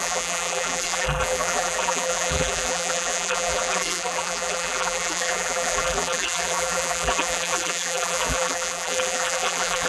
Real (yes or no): no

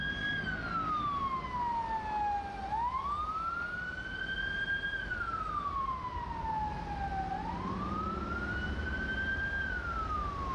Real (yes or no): yes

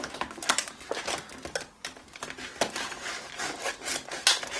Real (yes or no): yes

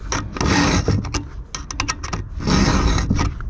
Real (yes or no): yes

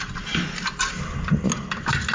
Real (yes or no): yes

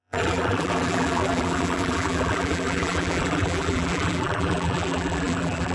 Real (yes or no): no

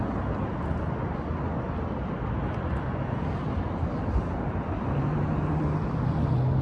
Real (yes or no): yes